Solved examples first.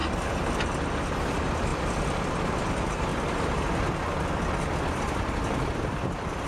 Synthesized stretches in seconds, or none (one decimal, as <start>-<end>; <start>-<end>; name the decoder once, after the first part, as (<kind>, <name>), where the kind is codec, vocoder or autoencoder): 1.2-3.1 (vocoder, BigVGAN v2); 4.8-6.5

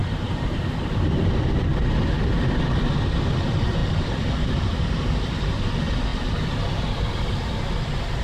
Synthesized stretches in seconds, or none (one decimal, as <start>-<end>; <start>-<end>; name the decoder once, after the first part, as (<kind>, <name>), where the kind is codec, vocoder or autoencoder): none

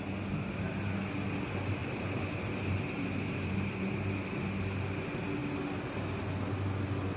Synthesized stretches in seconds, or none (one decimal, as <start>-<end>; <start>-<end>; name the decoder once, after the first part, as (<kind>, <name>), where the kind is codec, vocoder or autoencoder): 1.8-4.2 (vocoder, BigVGAN v2)

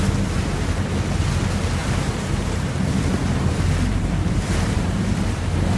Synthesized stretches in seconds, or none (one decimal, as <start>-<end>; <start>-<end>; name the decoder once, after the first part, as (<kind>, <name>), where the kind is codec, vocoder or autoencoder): 1.8-5.0 (vocoder, BigVGAN v2)

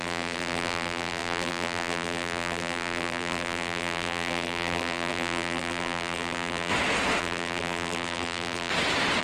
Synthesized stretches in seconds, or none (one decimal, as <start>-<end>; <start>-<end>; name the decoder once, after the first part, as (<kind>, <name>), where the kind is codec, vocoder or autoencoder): 0.0-6.7 (vocoder, BigVGAN v2); 7.2-8.7

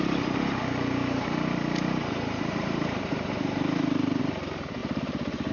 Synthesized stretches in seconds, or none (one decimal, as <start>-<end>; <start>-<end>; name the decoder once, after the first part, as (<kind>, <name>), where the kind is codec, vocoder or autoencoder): 1.0-4.2 (vocoder, BigVGAN v2)